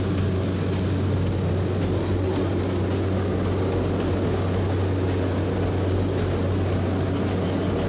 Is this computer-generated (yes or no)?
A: no